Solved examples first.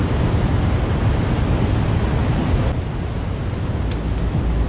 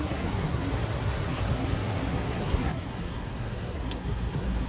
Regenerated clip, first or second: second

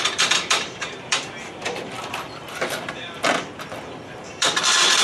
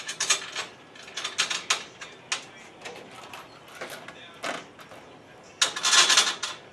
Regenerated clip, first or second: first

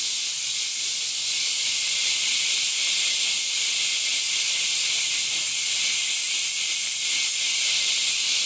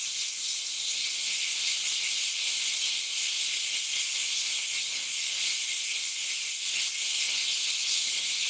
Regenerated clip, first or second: second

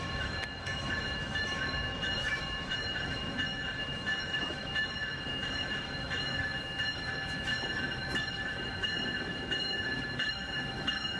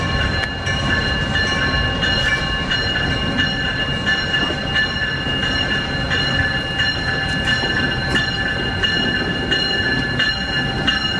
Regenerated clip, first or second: first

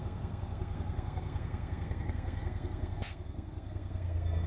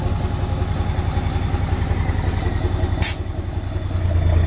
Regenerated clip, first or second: first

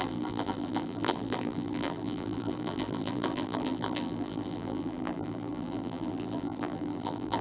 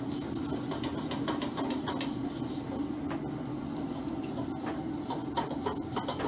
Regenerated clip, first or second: first